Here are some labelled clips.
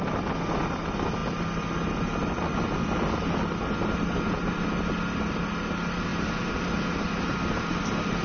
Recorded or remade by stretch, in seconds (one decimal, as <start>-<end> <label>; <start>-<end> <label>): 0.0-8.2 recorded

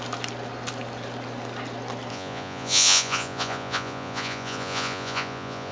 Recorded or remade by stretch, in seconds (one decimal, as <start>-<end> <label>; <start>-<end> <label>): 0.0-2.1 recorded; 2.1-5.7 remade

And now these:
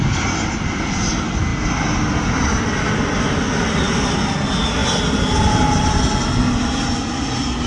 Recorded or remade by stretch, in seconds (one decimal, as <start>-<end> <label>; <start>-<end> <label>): 0.0-7.7 recorded